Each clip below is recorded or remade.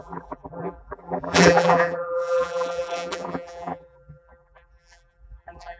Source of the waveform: remade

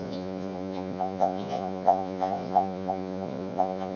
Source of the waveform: remade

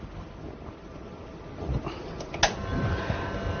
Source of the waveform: recorded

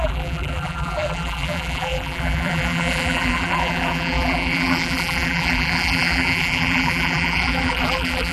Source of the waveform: remade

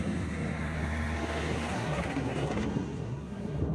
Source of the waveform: remade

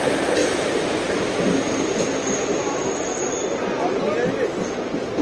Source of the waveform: recorded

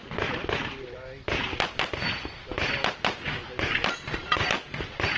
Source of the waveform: recorded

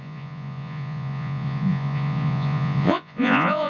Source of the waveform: remade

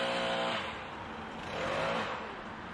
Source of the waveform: recorded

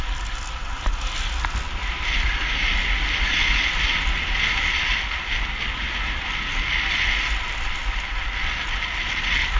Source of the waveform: recorded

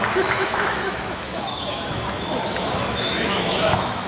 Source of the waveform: remade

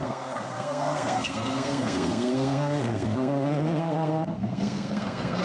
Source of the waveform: remade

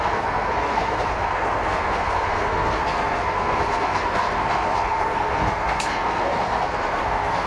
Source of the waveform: remade